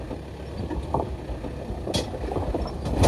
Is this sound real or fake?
real